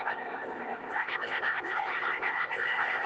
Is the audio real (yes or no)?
no